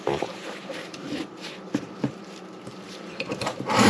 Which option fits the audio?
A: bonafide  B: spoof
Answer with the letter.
B